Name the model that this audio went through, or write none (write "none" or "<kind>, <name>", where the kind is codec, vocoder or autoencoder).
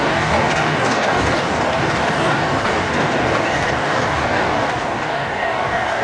codec, DAC